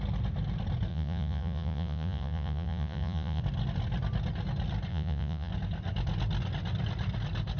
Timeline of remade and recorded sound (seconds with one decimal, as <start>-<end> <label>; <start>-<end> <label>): 0.0-0.9 recorded; 0.9-3.4 remade; 3.4-4.9 recorded; 4.9-5.5 remade; 5.5-7.6 recorded